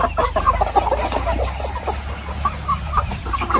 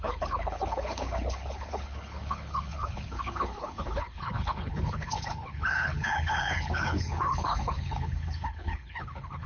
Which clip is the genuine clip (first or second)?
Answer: first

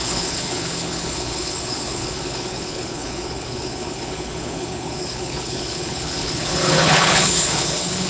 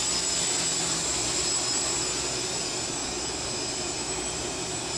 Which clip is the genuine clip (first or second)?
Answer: second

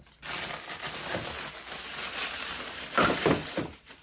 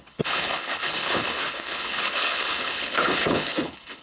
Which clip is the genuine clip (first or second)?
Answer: first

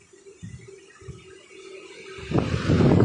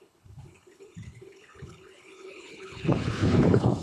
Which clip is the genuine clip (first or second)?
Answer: first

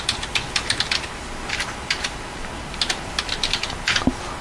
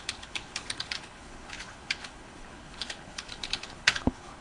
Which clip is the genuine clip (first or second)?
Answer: first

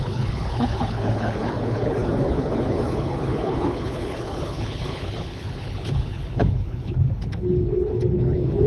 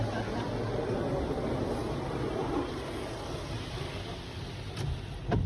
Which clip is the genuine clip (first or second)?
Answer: second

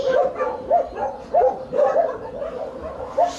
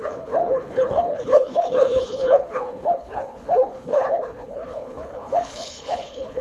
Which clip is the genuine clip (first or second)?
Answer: first